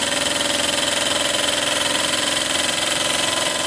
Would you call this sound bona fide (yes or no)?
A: no